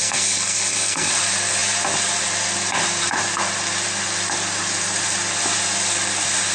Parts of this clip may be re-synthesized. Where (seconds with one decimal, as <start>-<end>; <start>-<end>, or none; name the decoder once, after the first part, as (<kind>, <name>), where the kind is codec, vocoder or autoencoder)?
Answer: 0.0-1.1 (codec, SNAC)